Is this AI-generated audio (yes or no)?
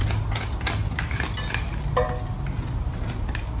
no